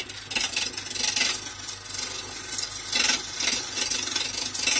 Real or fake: real